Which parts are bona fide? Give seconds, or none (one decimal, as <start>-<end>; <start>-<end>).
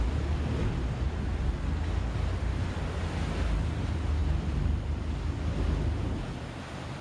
0.0-7.0